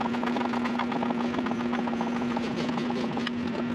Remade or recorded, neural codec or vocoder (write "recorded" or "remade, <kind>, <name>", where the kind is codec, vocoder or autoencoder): recorded